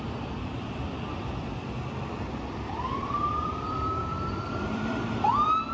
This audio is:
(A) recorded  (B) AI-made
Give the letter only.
B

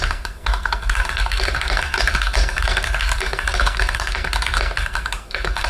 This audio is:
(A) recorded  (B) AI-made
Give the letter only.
B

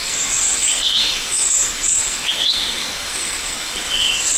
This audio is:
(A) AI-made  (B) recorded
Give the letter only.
A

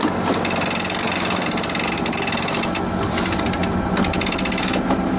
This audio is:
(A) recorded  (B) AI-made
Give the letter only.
A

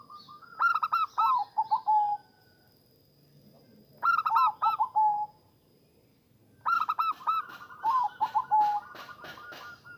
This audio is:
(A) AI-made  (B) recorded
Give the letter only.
B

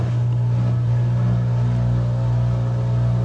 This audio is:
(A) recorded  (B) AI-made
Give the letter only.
A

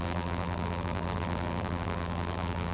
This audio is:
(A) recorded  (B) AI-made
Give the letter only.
B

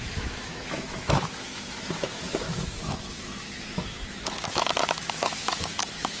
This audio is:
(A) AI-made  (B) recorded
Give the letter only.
A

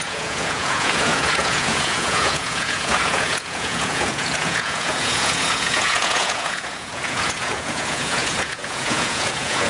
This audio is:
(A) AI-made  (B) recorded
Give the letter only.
A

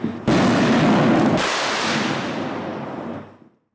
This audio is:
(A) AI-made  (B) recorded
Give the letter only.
B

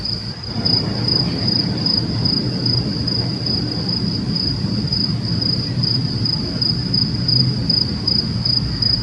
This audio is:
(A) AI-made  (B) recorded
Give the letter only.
A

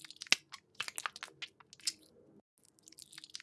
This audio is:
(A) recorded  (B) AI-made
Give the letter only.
A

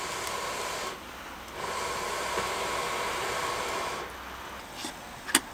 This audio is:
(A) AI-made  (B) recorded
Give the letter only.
B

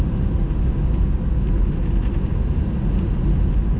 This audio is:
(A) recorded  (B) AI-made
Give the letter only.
A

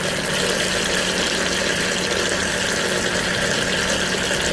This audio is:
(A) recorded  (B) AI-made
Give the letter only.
A